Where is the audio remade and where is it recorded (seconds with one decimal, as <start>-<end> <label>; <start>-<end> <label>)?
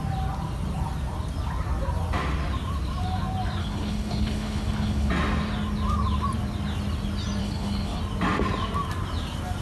0.0-3.6 recorded; 3.6-5.1 remade; 5.1-7.4 recorded; 7.4-8.0 remade; 8.0-9.6 recorded